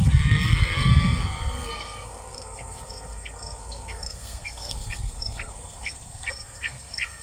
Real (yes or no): no